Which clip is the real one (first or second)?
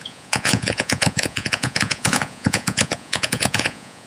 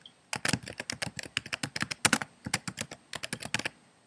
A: second